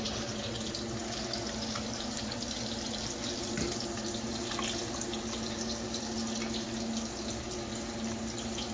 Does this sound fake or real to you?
real